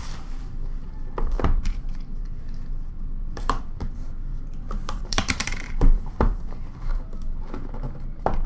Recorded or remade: remade